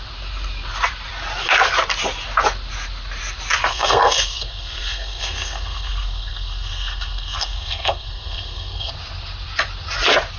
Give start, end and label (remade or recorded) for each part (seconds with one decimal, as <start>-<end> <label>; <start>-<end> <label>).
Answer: 0.0-3.7 recorded; 3.7-8.9 remade; 8.9-10.4 recorded